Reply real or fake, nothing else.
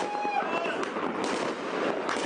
real